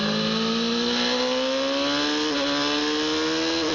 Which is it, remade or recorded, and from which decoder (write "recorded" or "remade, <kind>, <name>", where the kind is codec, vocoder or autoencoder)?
recorded